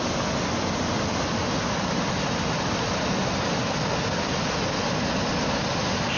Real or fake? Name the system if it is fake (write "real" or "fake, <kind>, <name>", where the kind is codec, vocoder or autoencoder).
real